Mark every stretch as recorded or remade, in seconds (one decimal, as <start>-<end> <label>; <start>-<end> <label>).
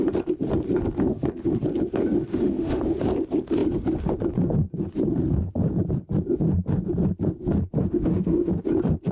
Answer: 0.0-2.3 recorded; 2.3-2.8 remade; 2.8-7.8 recorded; 7.8-8.5 remade; 8.5-9.1 recorded